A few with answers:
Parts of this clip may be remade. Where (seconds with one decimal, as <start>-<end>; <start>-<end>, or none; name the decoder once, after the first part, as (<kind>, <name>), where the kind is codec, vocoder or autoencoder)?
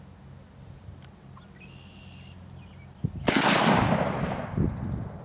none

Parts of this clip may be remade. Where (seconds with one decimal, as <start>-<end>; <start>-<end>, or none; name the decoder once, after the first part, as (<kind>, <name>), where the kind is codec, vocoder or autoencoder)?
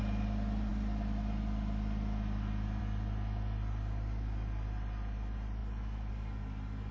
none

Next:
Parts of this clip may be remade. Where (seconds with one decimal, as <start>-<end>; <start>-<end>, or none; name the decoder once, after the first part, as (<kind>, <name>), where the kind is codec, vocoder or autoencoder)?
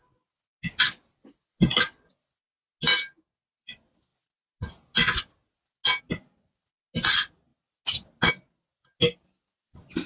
none